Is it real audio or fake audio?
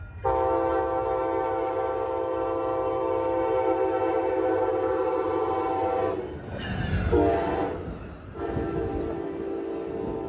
real